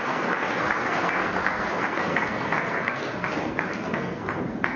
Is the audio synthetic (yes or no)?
yes